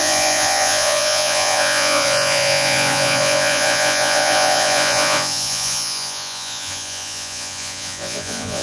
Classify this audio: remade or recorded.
remade